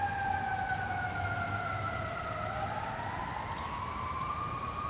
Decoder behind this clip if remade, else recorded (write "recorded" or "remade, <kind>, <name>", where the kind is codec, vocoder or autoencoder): recorded